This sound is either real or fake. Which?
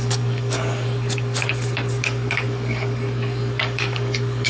fake